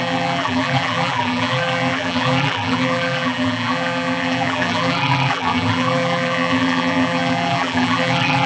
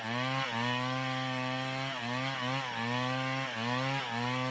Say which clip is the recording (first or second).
second